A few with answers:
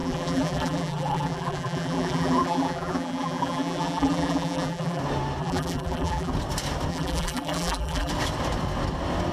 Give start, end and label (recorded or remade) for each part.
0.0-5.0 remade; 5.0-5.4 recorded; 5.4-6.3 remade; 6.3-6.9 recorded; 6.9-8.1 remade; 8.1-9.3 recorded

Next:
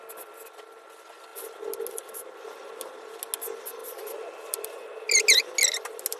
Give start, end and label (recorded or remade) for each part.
0.0-3.8 recorded; 3.8-4.7 remade; 4.7-6.2 recorded

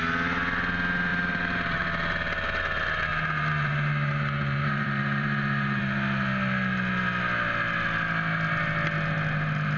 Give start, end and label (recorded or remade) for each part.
0.0-1.1 recorded; 1.1-1.9 remade; 1.9-3.1 recorded; 3.1-5.8 remade; 5.8-9.8 recorded

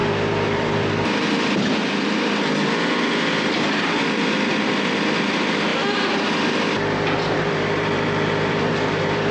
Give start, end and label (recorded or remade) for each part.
0.0-0.8 recorded; 0.8-9.3 remade

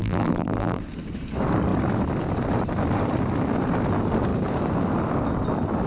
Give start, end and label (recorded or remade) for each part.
0.0-0.8 remade; 0.8-5.9 recorded

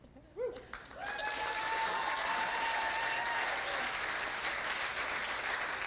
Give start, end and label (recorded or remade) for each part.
0.0-5.9 recorded

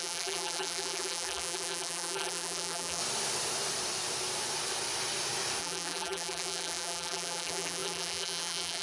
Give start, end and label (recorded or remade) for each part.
0.0-3.0 remade; 3.0-5.6 recorded; 5.6-8.8 remade

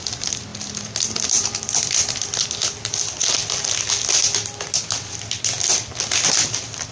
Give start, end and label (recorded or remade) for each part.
0.0-6.9 recorded